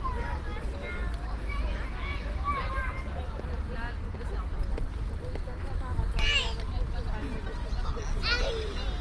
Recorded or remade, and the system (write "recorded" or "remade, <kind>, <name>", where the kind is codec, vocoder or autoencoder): recorded